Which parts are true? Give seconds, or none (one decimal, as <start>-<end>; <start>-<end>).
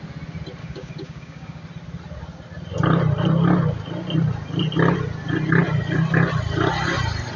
0.0-0.6; 1.6-7.4